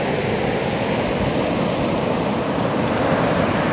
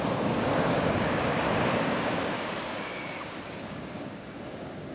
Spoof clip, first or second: second